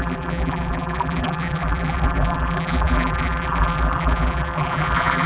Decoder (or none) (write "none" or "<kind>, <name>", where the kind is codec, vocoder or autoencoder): vocoder, BigVGAN v2